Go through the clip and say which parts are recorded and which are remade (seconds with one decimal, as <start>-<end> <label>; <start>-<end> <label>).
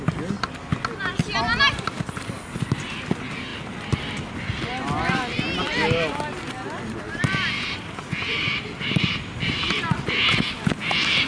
0.0-11.3 recorded